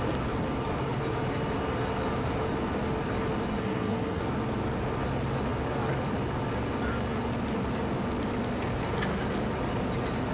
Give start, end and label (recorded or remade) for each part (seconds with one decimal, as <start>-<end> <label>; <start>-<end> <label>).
0.0-3.6 recorded; 3.6-4.2 remade; 4.2-10.3 recorded